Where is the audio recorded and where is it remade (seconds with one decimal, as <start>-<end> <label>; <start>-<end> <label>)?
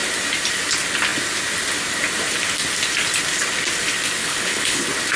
0.0-4.2 recorded; 4.2-4.8 remade; 4.8-5.2 recorded